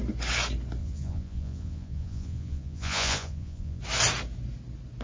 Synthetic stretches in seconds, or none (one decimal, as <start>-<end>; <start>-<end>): 0.8-3.8